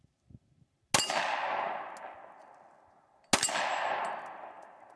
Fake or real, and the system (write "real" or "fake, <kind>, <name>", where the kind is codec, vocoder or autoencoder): real